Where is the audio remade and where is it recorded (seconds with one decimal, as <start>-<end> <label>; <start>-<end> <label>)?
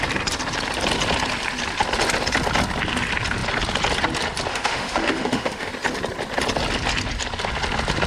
0.0-4.5 recorded; 4.5-5.7 remade; 5.7-8.1 recorded